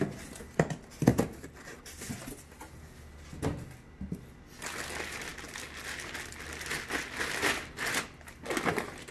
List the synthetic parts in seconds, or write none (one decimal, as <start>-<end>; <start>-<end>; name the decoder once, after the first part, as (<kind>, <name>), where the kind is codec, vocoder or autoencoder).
none